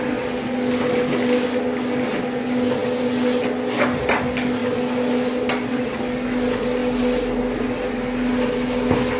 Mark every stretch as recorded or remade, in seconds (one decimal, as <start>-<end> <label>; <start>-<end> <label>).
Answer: 0.0-9.2 recorded